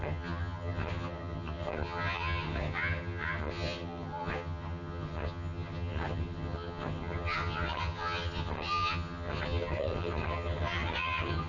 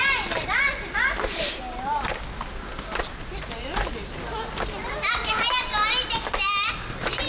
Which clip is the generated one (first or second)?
first